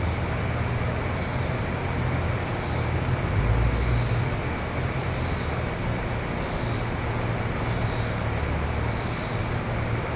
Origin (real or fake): real